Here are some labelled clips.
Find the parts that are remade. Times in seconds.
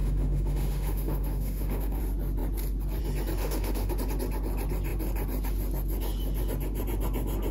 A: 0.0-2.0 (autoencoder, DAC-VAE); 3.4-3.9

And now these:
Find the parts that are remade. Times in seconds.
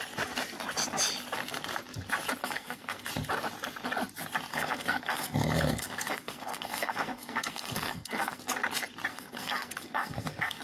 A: 2.4-3.1 (codec, SNAC); 4.5-8.4; 9.1-10.6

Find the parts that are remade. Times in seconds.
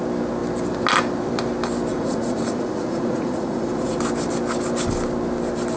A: 1.9-4.0 (vocoder, Vocos)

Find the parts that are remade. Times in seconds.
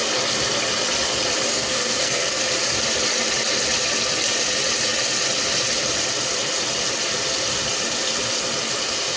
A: 1.5-2.4 (codec, SNAC)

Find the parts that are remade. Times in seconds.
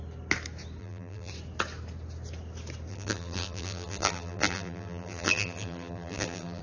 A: 0.8-1.3 (vocoder, BigVGAN v2); 2.9-6.6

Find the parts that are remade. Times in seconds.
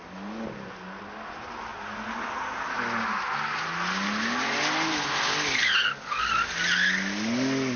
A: none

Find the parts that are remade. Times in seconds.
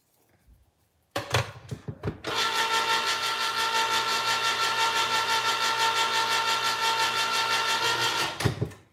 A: 0.5-1.5 (vocoder, BigVGAN v2); 4.1-5.5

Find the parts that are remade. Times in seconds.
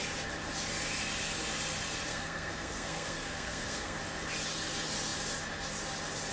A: 2.1-4.0 (codec, SNAC)